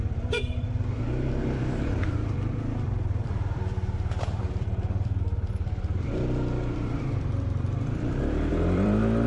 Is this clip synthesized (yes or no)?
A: yes